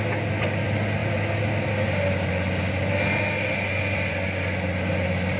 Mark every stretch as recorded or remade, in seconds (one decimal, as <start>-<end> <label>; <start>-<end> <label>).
0.0-5.4 recorded